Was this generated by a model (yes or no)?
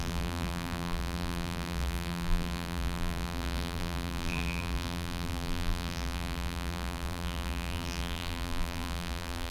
yes